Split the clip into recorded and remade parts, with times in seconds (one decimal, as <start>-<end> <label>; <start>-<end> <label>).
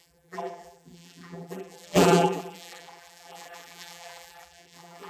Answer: 0.0-5.1 remade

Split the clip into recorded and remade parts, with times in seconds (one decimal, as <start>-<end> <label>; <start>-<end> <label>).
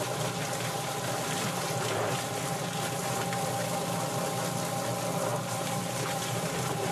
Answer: 0.0-5.3 recorded; 5.3-6.9 remade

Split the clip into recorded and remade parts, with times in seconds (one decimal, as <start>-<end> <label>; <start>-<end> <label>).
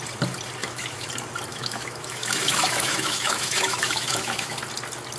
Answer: 0.0-0.6 recorded; 0.6-1.1 remade; 1.1-1.5 recorded; 1.5-4.6 remade; 4.6-5.2 recorded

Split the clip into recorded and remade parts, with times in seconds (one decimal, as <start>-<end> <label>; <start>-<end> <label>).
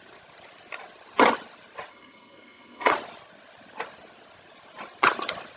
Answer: 0.0-1.9 recorded; 1.9-2.9 remade; 2.9-5.6 recorded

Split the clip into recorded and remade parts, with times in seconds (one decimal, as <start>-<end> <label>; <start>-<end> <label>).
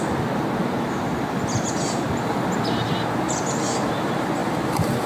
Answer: 0.0-5.1 recorded